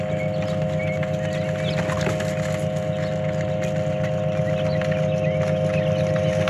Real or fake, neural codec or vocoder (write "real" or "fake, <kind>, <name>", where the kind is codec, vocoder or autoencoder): real